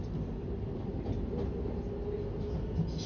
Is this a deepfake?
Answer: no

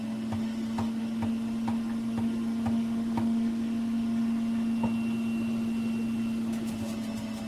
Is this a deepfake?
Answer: no